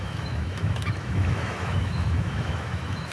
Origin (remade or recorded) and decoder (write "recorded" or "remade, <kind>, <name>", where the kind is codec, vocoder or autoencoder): remade, autoencoder, DAC-VAE